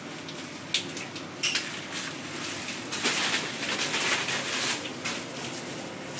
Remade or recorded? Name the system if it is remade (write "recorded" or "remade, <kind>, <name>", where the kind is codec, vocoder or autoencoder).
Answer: recorded